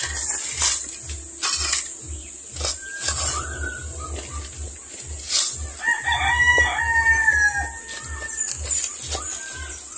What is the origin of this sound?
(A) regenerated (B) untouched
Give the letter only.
B